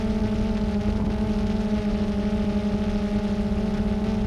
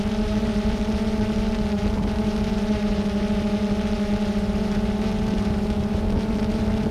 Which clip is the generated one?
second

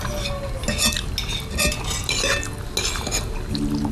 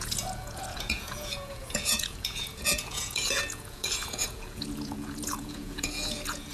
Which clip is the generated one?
second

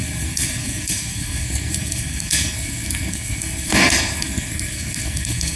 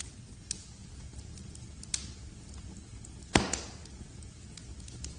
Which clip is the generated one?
first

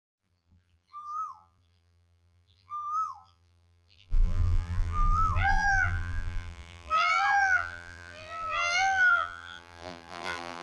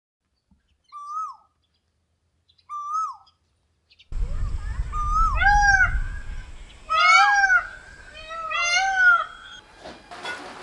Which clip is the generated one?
first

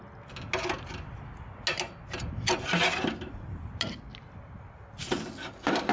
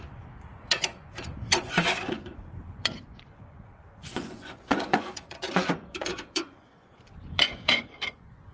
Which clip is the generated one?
second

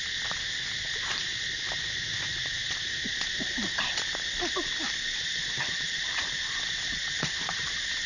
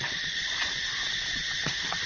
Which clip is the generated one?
second